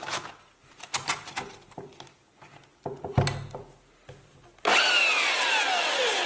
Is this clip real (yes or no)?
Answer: yes